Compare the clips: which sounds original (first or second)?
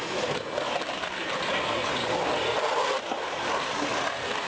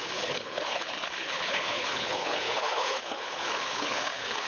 first